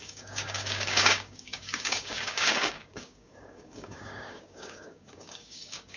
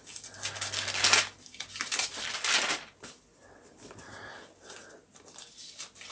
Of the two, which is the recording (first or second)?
second